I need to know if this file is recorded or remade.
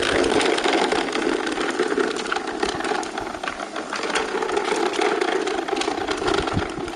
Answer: recorded